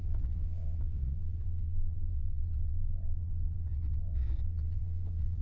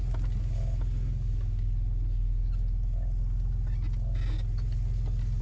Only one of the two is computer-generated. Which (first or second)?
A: first